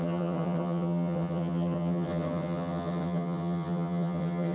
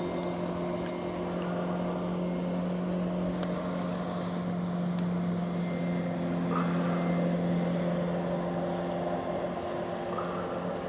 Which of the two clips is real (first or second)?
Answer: second